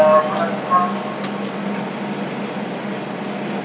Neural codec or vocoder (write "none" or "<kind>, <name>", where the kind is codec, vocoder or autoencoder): none